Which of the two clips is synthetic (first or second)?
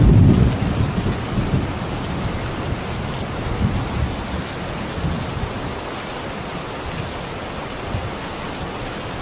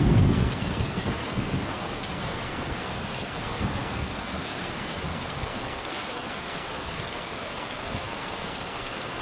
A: second